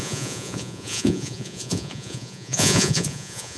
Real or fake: fake